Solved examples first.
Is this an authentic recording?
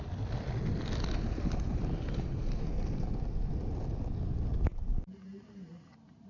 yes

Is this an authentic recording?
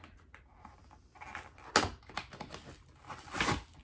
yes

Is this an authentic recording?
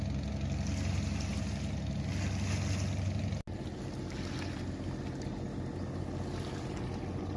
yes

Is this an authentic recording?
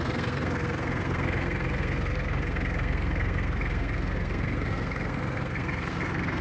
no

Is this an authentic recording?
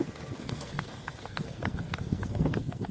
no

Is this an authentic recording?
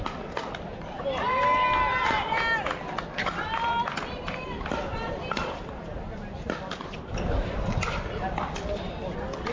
yes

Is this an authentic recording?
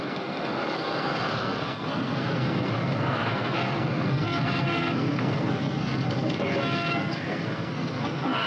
no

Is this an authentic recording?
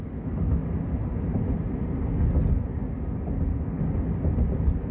yes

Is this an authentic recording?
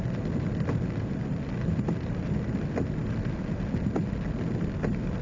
yes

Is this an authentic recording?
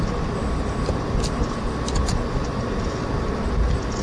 yes